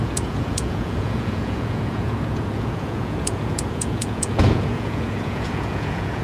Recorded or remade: remade